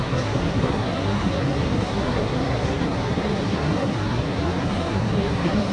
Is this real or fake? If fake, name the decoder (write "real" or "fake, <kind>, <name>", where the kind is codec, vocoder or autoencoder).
fake, codec, SNAC